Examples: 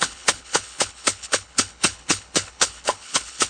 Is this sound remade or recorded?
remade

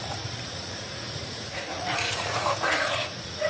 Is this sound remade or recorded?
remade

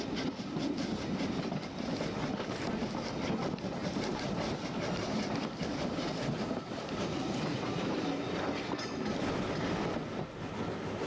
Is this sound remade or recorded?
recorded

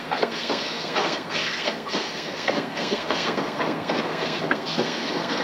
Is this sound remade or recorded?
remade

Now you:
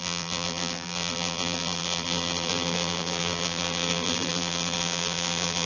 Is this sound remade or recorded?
remade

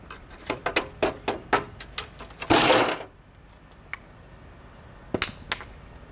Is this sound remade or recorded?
recorded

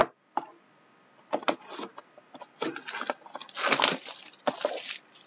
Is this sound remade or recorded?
recorded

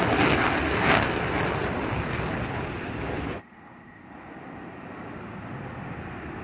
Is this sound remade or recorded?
recorded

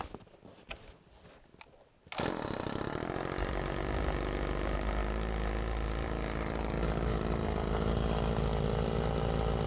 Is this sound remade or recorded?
recorded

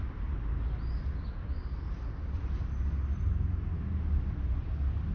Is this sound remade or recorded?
recorded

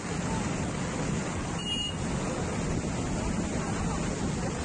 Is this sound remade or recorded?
recorded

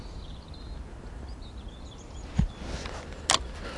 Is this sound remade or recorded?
recorded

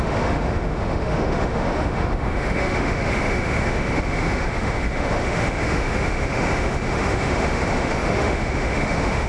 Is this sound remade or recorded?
remade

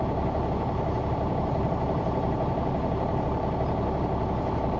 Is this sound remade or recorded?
remade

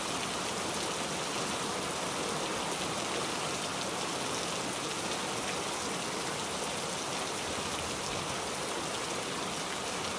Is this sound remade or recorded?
recorded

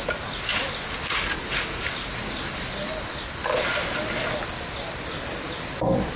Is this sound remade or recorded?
recorded